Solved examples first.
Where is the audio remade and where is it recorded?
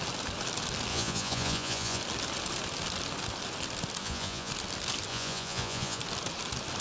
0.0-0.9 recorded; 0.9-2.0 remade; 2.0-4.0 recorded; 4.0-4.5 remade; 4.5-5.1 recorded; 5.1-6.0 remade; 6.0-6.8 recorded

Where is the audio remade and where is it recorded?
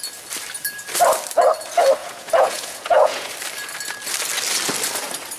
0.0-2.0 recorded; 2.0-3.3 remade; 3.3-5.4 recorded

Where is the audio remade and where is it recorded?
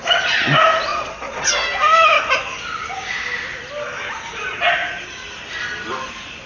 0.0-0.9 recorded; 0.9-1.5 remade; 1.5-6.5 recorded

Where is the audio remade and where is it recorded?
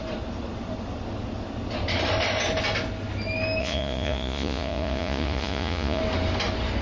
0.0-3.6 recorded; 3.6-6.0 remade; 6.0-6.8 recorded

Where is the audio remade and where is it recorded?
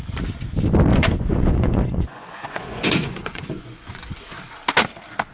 0.0-0.9 recorded; 0.9-4.0 remade; 4.0-5.3 recorded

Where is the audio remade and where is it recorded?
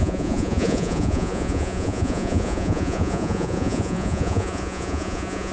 0.0-5.5 remade